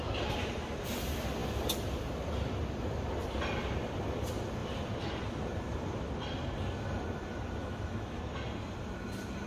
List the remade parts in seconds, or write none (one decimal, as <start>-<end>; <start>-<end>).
7.6-8.2